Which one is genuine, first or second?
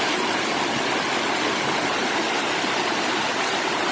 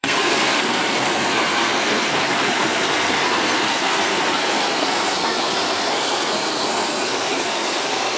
first